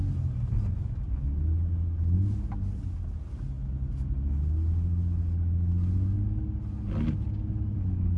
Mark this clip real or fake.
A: real